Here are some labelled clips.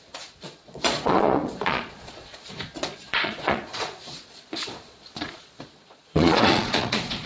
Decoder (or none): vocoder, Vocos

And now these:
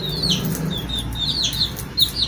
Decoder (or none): none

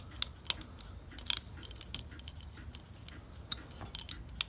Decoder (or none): none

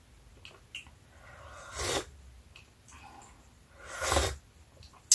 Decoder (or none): none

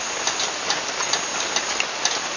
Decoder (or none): none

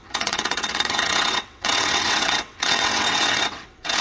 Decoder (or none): vocoder, WaveNeXt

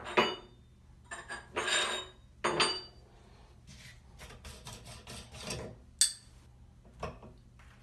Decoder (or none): none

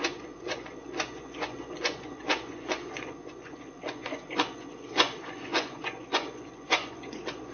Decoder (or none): vocoder, Vocos